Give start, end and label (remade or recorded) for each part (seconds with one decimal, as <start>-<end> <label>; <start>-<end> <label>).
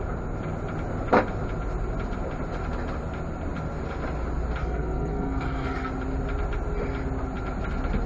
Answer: 0.0-4.6 recorded; 4.6-5.9 remade; 5.9-8.1 recorded